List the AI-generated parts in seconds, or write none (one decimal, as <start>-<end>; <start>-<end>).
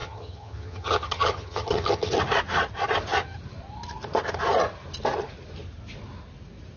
0.0-2.1